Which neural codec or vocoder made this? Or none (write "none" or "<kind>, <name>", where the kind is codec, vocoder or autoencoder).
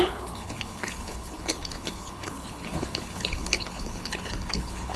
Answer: codec, HILCodec